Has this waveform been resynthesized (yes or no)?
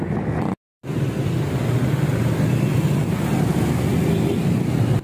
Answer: no